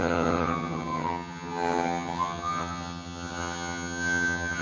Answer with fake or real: fake